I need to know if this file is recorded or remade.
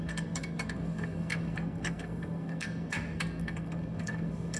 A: remade